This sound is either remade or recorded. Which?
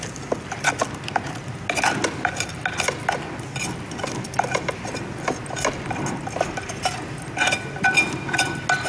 recorded